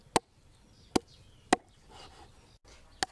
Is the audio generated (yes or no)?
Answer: no